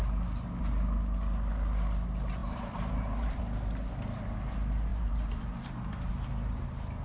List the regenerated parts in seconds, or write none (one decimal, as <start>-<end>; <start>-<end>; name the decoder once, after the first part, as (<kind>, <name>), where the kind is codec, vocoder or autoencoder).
2.4-3.4 (vocoder, BigVGAN v2); 4.9-6.1